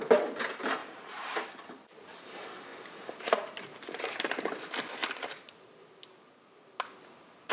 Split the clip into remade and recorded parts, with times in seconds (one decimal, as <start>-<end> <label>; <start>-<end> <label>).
0.0-0.8 recorded; 0.8-1.6 remade; 1.6-2.7 recorded; 2.7-4.3 remade; 4.3-7.5 recorded